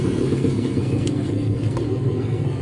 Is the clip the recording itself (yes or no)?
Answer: no